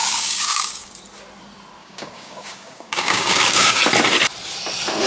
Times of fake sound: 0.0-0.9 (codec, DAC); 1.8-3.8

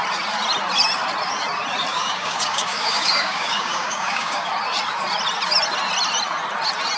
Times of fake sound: 1.9-4.5 (codec, DAC)

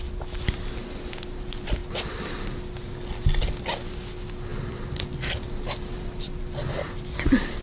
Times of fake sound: none

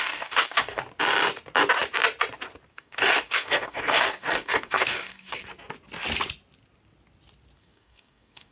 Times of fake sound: 0.0-0.8 (codec, DAC); 2.7-5.4; 7.6-8.5